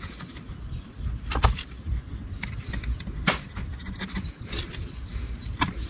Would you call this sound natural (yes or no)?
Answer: yes